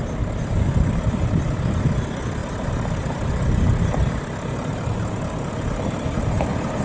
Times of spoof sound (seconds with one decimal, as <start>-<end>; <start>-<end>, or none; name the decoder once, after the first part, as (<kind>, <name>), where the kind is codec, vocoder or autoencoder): none